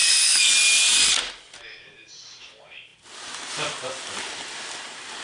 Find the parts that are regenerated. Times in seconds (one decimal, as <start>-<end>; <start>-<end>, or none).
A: 0.0-0.5